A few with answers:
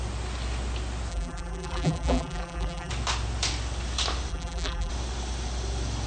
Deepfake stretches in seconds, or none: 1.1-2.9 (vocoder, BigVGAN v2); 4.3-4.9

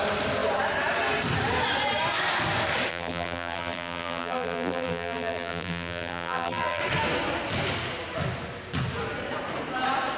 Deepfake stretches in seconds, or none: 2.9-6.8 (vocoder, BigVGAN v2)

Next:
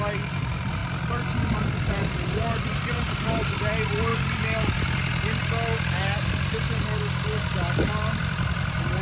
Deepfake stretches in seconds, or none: none

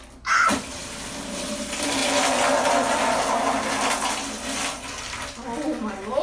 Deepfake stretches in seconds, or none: none